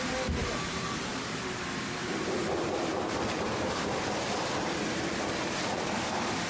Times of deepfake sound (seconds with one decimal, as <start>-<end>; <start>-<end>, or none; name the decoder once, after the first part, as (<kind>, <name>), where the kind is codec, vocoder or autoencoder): 0.4-1.1 (vocoder, BigVGAN v2); 2.0-4.0